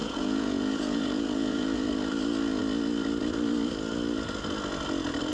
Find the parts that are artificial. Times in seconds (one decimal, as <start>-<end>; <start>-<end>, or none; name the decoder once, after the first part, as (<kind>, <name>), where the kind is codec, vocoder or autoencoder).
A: 0.0-1.9 (vocoder, Vocos)